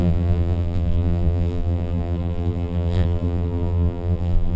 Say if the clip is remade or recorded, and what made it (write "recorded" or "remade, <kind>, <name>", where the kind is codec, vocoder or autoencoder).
remade, vocoder, BigVGAN v2